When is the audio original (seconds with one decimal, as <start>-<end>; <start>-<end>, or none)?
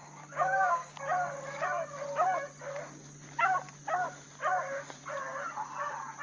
1.0-6.2